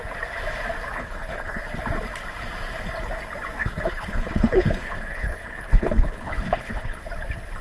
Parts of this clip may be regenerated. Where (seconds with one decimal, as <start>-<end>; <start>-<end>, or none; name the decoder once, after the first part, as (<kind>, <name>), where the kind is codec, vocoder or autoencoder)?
0.9-1.7 (codec, HILCodec); 3.6-7.0